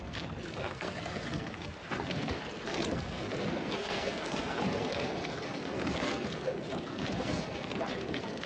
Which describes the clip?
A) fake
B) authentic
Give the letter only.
A